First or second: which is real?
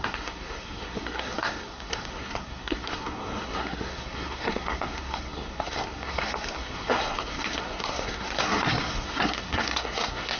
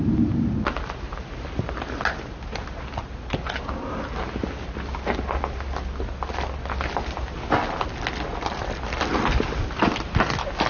second